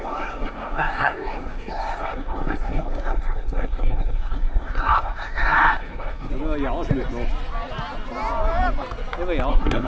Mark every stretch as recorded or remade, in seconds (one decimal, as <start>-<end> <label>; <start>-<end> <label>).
0.0-6.3 remade; 6.3-9.5 recorded; 9.5-9.9 remade